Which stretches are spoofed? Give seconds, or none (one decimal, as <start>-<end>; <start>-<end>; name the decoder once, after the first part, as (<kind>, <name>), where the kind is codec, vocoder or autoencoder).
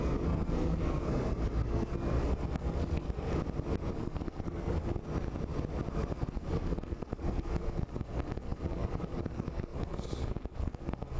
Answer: 0.0-3.3 (codec, SNAC); 3.9-5.0; 5.9-11.2